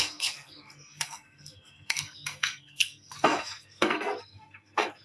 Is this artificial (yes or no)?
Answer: yes